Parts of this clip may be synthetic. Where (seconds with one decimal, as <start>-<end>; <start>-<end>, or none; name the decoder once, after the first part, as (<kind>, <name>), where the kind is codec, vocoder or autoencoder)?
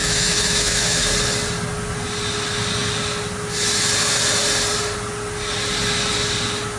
0.0-1.1 (autoencoder, DAC-VAE)